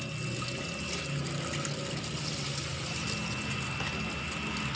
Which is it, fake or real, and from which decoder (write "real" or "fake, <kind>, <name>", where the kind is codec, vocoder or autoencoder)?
real